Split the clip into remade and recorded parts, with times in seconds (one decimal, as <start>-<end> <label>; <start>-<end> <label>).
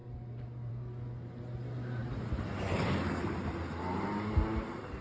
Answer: 0.0-5.0 recorded